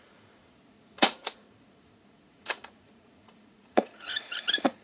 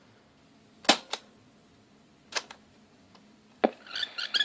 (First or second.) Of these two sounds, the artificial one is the first